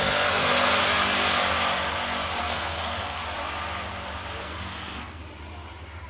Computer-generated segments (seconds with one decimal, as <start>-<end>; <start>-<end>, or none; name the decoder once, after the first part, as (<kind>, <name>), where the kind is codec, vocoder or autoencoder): 0.0-0.8 (codec, SNAC); 2.4-3.2; 4.4-5.2